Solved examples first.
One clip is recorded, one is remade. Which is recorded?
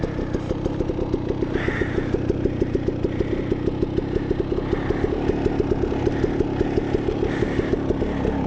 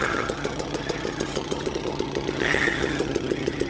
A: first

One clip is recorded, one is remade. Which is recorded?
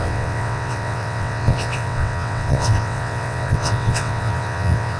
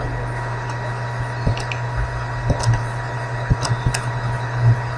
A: second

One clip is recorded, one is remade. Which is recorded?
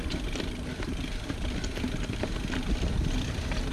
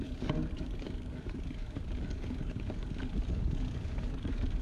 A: first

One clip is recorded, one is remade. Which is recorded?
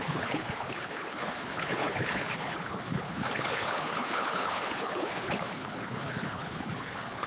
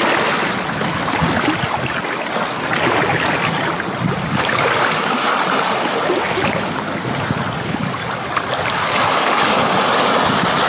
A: second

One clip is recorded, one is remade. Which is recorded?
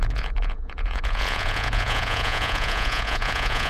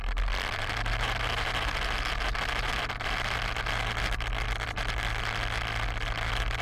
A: second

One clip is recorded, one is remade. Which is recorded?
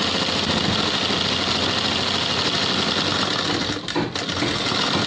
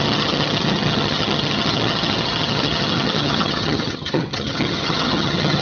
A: first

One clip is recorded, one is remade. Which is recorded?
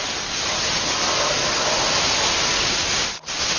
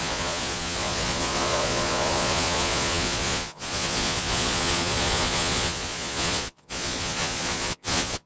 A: first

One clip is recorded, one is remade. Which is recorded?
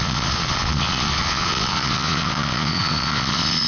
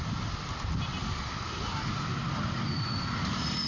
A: second